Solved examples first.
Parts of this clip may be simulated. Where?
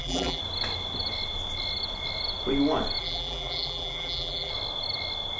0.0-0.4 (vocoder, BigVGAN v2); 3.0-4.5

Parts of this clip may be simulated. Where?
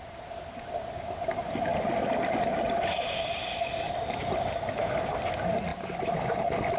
none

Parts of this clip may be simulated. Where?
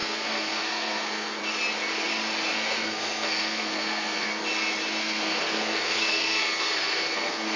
0.0-1.4 (codec, SNAC); 2.5-4.4; 5.0-7.6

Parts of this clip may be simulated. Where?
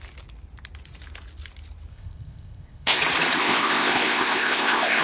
1.9-3.0 (codec, ZipCodec); 3.4-5.0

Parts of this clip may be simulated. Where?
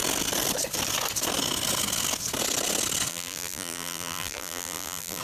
3.1-5.2 (vocoder, BigVGAN v2)